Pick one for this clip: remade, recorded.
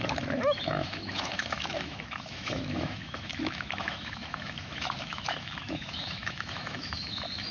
remade